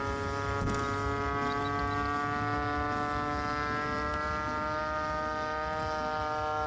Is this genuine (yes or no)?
yes